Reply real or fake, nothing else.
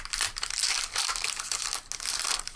real